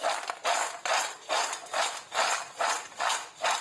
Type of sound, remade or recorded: recorded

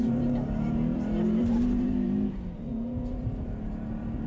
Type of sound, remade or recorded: remade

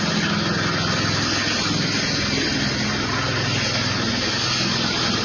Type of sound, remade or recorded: recorded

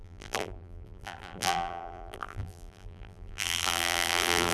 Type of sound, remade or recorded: remade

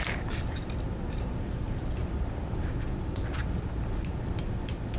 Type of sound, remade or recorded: recorded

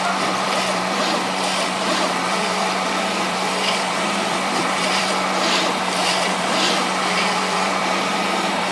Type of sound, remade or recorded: remade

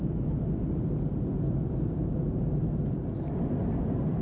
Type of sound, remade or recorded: remade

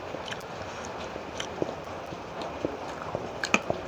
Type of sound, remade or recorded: recorded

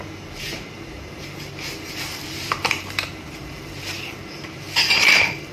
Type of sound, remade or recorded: remade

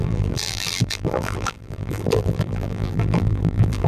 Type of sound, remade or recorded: remade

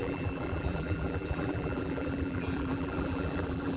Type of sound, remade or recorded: remade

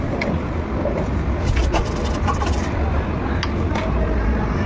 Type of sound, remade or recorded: recorded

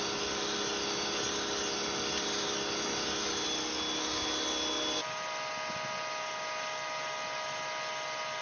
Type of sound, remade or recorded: recorded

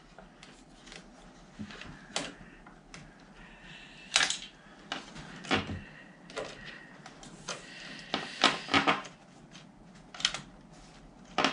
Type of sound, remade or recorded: recorded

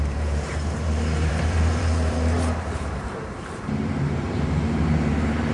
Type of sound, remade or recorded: remade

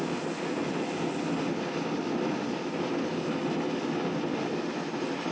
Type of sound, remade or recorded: recorded